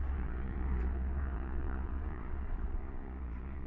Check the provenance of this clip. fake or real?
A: fake